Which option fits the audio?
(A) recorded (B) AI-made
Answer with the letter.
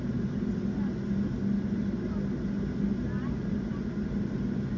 A